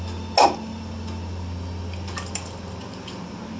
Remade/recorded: recorded